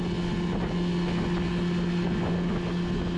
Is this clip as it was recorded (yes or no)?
yes